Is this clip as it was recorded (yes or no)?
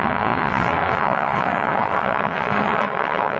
no